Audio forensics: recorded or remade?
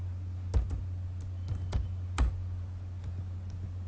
recorded